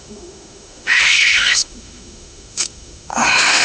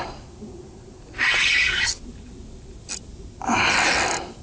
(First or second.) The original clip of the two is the second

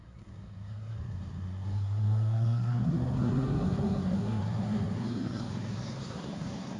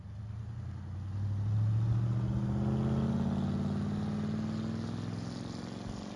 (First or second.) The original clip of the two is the second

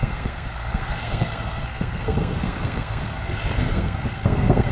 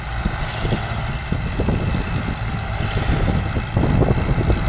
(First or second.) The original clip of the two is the second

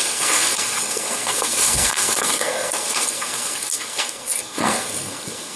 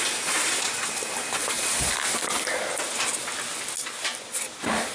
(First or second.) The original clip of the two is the second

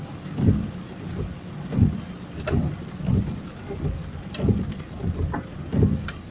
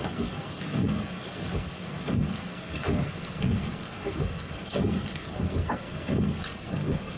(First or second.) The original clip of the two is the first